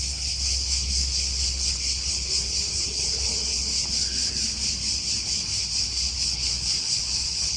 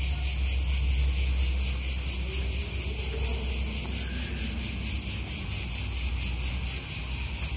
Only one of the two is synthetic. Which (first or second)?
first